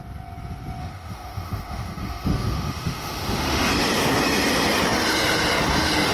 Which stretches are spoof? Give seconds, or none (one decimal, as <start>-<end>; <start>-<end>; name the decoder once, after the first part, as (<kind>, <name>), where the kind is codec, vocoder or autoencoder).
0.8-3.7 (autoencoder, DAC-VAE)